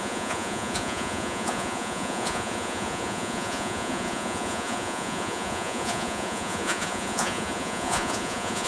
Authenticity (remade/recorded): remade